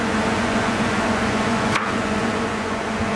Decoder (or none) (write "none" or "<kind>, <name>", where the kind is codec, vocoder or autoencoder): vocoder, Vocos